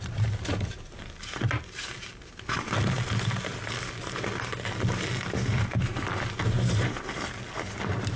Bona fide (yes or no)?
yes